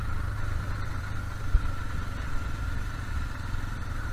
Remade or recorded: recorded